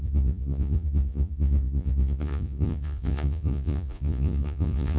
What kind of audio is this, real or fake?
fake